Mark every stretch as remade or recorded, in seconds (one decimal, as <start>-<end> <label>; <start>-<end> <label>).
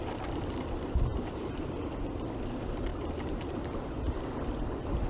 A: 0.0-1.1 recorded; 1.1-1.7 remade; 1.7-2.9 recorded; 2.9-4.0 remade; 4.0-5.1 recorded